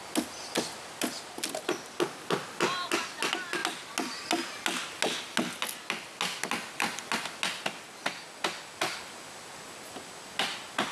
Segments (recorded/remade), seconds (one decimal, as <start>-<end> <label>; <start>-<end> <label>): 0.0-10.9 recorded